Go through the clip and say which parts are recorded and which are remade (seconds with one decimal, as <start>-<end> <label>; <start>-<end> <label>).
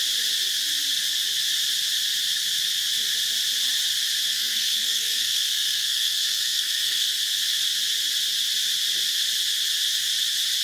0.0-4.3 recorded; 4.3-7.2 remade; 7.2-10.6 recorded